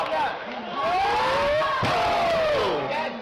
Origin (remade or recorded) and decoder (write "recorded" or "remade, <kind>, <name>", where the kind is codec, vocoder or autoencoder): recorded